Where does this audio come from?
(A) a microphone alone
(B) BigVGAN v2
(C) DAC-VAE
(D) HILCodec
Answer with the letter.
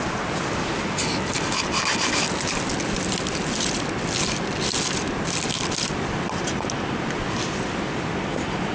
A